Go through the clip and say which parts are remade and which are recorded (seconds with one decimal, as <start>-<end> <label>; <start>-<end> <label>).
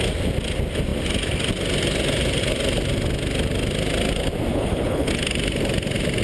0.0-4.5 recorded; 4.5-5.1 remade; 5.1-6.2 recorded